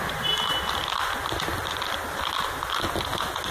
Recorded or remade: recorded